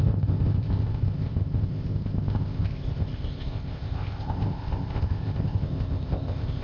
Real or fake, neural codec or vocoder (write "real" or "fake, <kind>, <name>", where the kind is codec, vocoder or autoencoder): fake, codec, ZipCodec